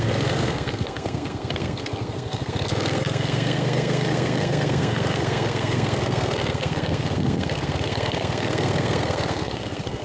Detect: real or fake fake